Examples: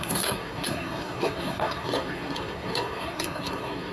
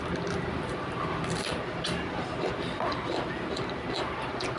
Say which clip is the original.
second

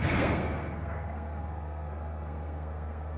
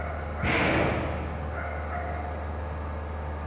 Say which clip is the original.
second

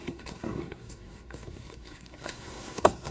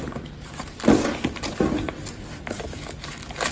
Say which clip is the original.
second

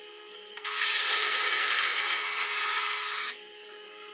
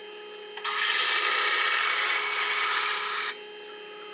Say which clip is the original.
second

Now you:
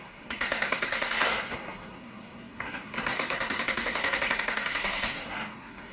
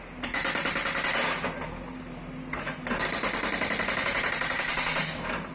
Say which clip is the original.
second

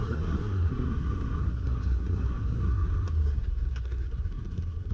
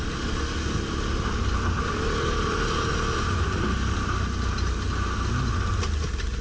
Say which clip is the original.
second